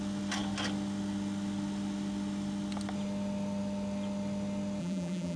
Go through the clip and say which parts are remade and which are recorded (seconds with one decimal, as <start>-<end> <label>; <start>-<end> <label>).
0.0-4.8 recorded; 4.8-5.4 remade